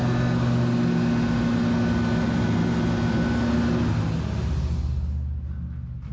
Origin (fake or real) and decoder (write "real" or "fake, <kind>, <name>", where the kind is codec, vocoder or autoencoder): real